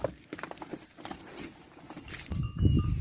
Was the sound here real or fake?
real